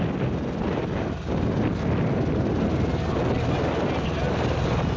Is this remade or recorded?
recorded